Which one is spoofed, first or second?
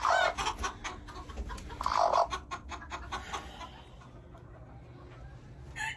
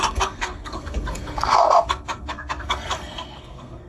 second